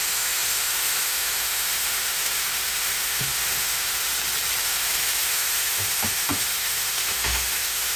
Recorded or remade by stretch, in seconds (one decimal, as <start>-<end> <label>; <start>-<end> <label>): 0.0-4.1 remade; 4.1-4.6 recorded; 4.6-8.0 remade